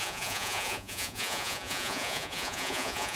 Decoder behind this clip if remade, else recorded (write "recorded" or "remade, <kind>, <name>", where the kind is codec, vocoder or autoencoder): remade, vocoder, Vocos